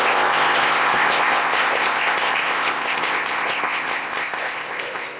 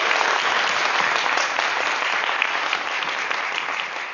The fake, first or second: first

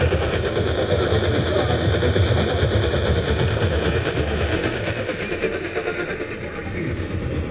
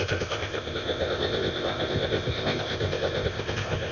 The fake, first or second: second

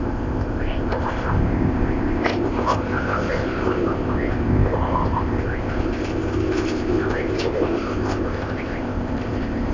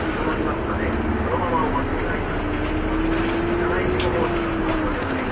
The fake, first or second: first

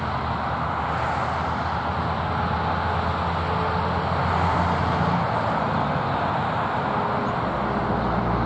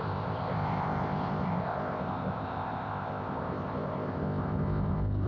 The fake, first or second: second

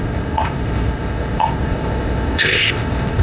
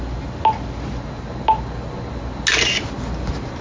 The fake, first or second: first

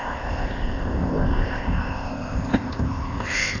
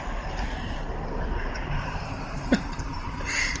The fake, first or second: first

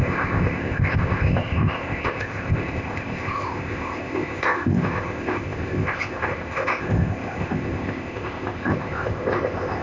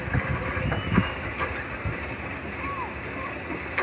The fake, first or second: first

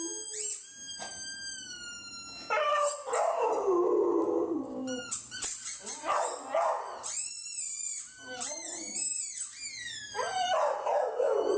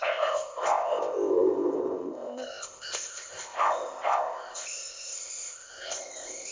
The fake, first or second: second